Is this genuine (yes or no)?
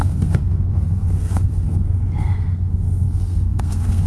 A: no